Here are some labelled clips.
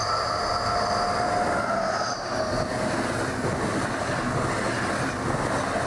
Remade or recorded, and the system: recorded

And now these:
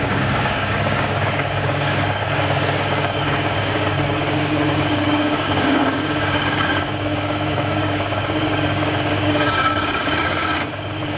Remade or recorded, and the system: remade, codec, DAC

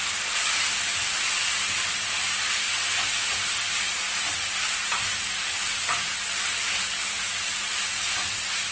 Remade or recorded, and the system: remade, vocoder, BigVGAN v2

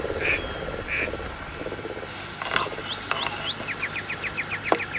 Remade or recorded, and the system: recorded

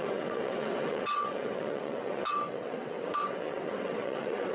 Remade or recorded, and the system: remade, vocoder, WaveNeXt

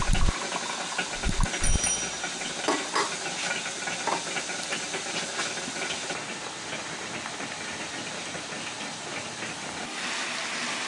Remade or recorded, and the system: recorded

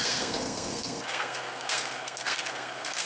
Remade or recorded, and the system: remade, codec, SNAC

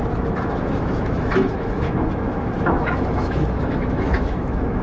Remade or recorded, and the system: remade, autoencoder, DAC-VAE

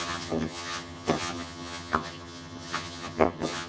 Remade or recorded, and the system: remade, vocoder, HiFi-GAN